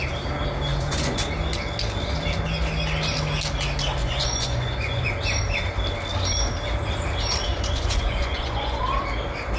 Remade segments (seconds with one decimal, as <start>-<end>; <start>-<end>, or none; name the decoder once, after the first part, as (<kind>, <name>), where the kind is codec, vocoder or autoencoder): 0.7-1.3 (vocoder, Vocos); 4.0-5.1; 7.5-8.8